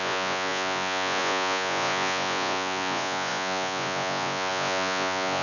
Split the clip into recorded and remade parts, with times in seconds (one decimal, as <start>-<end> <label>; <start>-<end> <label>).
0.0-5.4 remade